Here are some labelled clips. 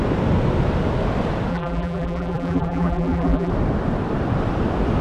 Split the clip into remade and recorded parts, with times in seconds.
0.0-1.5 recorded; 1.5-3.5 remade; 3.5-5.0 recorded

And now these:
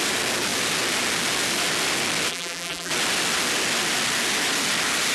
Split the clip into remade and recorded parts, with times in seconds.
0.0-2.3 recorded; 2.3-2.9 remade; 2.9-5.1 recorded